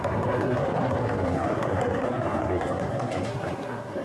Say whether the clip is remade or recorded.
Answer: remade